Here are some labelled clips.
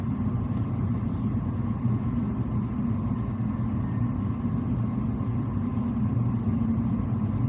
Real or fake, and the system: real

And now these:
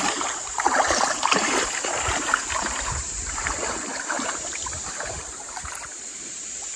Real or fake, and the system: fake, vocoder, BigVGAN v2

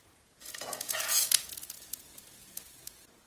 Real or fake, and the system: fake, vocoder, Vocos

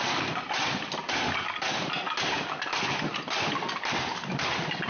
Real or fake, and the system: real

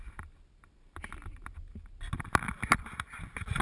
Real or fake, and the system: real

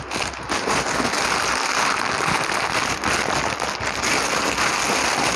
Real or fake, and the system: real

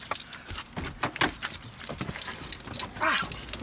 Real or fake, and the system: real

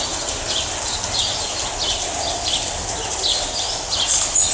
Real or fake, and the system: real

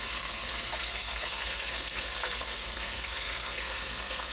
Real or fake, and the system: fake, codec, SNAC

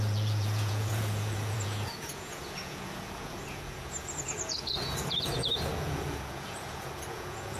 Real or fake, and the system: fake, vocoder, Vocos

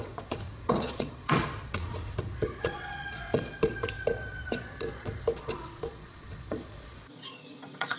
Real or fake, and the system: fake, vocoder, Vocos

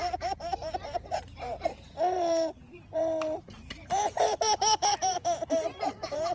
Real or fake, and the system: fake, vocoder, BigVGAN v2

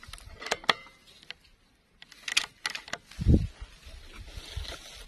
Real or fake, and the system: real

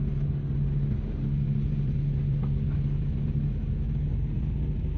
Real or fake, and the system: real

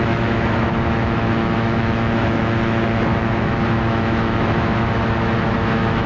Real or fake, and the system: fake, autoencoder, DAC-VAE